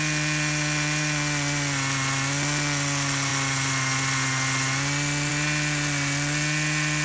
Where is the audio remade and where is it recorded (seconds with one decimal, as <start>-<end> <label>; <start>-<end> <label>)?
0.0-7.0 recorded